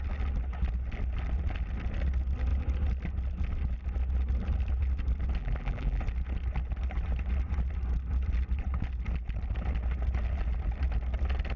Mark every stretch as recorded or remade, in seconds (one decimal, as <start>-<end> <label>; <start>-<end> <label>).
0.0-5.4 recorded; 5.4-6.0 remade; 6.0-11.6 recorded